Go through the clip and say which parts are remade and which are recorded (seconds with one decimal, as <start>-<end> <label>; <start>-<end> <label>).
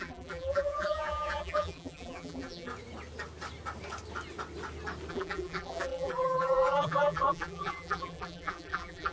0.0-2.7 remade; 2.7-5.1 recorded; 5.1-9.1 remade